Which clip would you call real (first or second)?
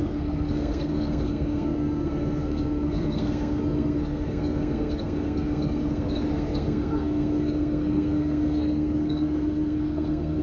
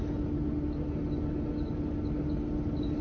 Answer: second